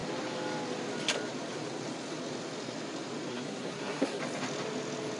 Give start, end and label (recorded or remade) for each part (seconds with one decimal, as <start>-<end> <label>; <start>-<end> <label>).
0.0-3.3 recorded; 3.3-4.2 remade; 4.2-5.2 recorded